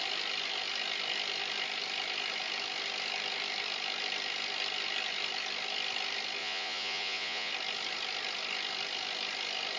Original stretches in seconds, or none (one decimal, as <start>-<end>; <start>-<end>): 0.0-6.4; 7.5-9.8